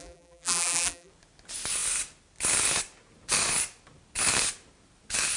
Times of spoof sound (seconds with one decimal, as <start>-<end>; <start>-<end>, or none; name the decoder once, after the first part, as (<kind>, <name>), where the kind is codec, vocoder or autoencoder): 0.0-1.1 (vocoder, BigVGAN v2)